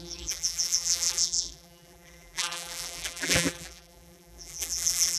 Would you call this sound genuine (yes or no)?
no